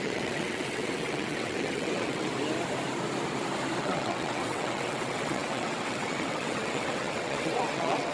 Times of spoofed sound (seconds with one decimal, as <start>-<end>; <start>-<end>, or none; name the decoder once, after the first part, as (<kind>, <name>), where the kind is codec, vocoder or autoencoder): 0.0-2.3 (vocoder, WaveNeXt); 3.8-8.1